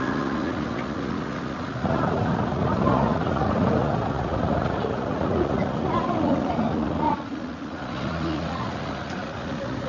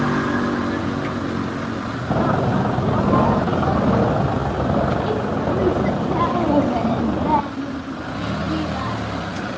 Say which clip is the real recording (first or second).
second